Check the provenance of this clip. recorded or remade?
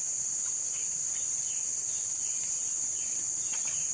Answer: recorded